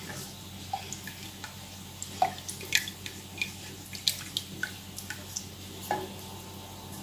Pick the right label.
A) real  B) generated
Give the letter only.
A